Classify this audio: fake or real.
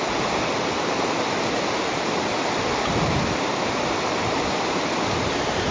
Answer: real